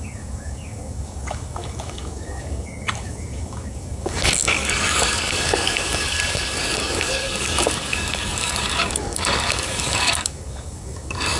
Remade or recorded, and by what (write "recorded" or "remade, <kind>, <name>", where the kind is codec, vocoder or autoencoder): remade, codec, DAC